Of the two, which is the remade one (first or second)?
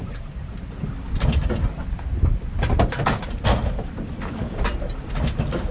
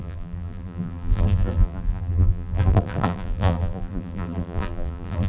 second